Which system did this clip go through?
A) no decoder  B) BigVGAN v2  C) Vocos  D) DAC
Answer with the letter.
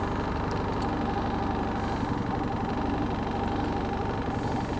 A